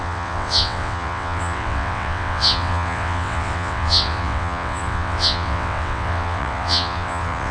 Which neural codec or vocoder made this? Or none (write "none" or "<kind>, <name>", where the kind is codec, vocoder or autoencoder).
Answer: vocoder, WaveNeXt